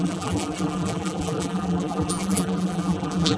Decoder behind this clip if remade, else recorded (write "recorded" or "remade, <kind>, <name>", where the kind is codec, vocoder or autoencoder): remade, vocoder, BigVGAN v2